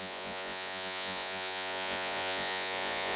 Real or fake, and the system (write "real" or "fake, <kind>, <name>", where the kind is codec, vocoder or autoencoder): fake, vocoder, Vocos